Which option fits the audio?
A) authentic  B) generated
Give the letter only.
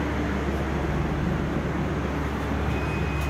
A